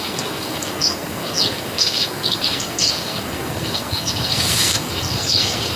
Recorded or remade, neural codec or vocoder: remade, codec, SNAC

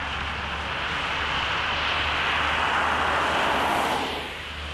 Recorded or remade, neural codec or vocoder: recorded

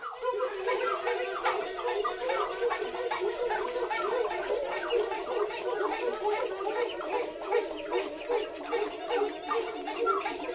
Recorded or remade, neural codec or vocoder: recorded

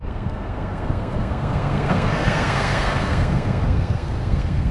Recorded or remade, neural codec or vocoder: remade, codec, SNAC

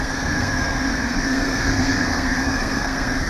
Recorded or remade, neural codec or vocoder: remade, codec, SNAC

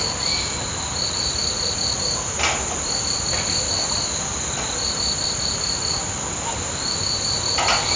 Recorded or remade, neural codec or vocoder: recorded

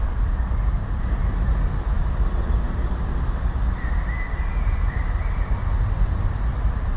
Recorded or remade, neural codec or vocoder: recorded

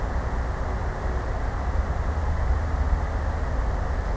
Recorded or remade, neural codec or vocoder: recorded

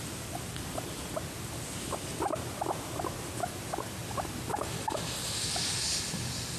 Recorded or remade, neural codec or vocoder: recorded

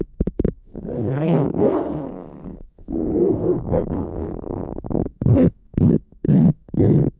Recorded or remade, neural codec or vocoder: remade, codec, SNAC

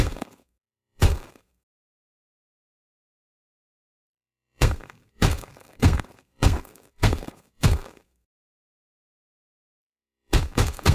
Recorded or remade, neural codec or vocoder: remade, codec, SNAC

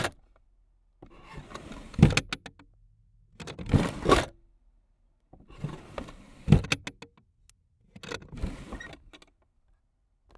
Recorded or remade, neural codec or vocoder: recorded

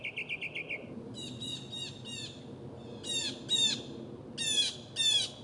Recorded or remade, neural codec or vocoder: recorded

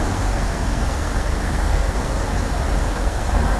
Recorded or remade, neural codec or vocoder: remade, codec, SNAC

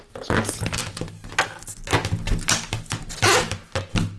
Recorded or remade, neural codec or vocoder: recorded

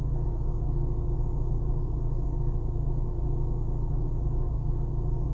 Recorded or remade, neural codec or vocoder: recorded